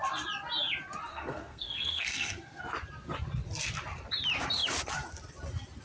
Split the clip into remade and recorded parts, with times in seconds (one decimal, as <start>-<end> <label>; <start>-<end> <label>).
0.0-1.1 recorded; 1.1-2.6 remade; 2.6-5.8 recorded